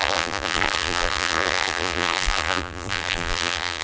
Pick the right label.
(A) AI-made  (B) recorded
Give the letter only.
A